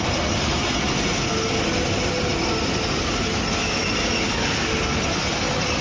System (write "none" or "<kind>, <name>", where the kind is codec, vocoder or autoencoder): none